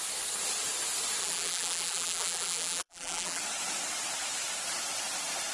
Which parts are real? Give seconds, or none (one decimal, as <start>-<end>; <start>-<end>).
0.0-1.2; 3.4-5.5